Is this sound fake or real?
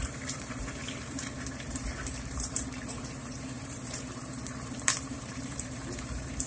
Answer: fake